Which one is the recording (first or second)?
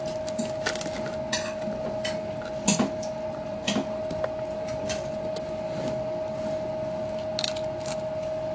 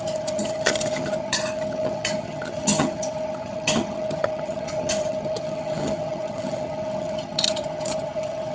first